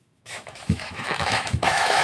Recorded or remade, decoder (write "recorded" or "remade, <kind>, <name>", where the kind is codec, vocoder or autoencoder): remade, autoencoder, DAC-VAE